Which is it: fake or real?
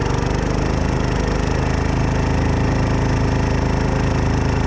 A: real